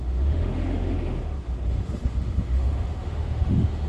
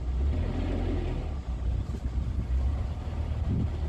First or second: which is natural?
second